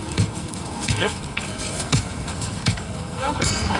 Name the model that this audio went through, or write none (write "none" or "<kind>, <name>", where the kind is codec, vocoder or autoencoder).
codec, SNAC